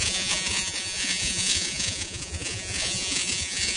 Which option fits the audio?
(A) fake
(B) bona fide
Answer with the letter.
A